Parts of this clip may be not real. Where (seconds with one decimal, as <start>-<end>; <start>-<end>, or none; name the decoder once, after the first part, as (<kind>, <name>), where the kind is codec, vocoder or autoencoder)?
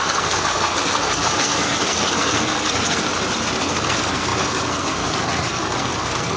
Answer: 0.0-3.1 (codec, SNAC); 3.6-6.4